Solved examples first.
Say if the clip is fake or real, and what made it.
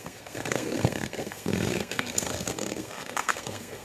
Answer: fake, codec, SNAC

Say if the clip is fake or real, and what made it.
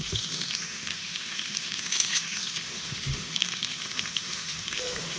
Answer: fake, autoencoder, DAC-VAE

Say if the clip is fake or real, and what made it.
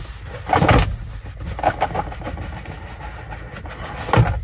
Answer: real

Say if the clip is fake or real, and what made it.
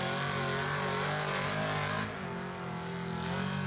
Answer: real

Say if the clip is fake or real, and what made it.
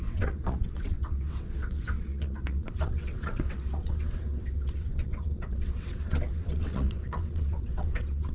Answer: fake, vocoder, WaveNeXt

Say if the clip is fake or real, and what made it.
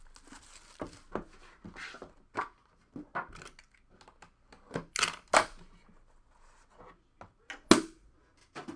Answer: real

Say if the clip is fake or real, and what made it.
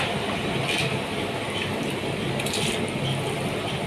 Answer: real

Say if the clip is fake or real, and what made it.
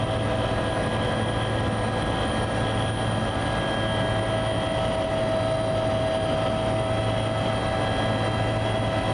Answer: real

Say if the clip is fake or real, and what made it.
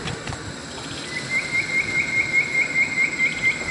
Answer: real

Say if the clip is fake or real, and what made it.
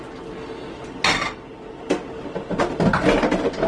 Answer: real